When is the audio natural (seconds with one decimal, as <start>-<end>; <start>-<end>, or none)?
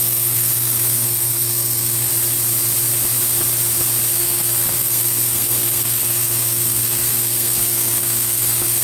2.1-4.1